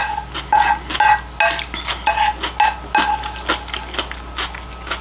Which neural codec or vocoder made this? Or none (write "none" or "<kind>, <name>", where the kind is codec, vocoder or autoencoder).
none